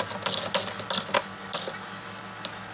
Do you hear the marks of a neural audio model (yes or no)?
no